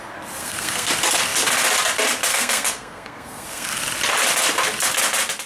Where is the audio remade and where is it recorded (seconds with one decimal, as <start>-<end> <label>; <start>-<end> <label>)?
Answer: 0.0-0.4 recorded; 0.4-0.9 remade; 0.9-2.3 recorded; 2.3-3.8 remade; 3.8-5.5 recorded